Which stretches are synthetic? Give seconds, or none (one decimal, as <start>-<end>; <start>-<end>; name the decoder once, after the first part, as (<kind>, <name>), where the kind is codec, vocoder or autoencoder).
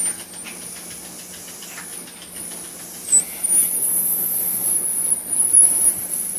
4.9-6.4 (vocoder, BigVGAN v2)